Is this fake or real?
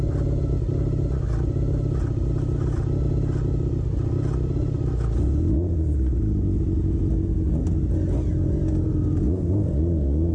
real